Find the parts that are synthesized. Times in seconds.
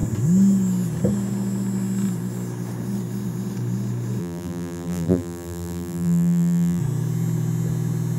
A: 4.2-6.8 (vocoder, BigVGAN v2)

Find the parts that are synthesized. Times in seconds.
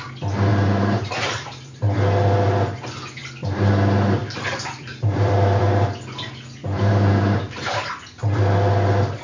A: 0.5-1.8 (vocoder, BigVGAN v2); 3.2-3.7; 4.2-5.6; 6.6-7.9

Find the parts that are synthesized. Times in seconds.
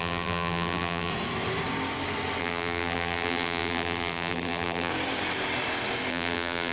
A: 0.0-1.1 (vocoder, BigVGAN v2); 2.4-4.9; 6.1-6.7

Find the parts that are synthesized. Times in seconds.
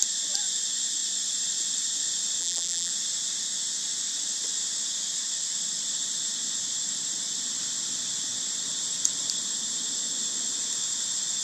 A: 2.4-2.9 (vocoder, BigVGAN v2)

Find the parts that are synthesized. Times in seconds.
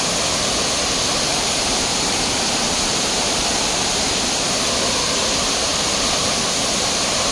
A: 1.3-4.0 (vocoder, BigVGAN v2); 5.7-6.3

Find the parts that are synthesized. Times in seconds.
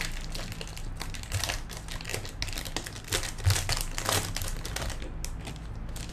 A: none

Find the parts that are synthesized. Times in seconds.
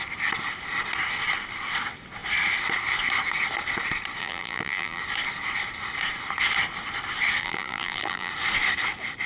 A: 4.2-5.0 (vocoder, BigVGAN v2); 7.4-8.3